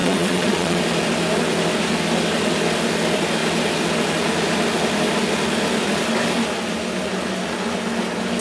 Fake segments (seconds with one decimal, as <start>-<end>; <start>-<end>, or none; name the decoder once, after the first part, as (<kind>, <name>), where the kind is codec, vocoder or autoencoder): 0.0-0.8 (vocoder, Vocos)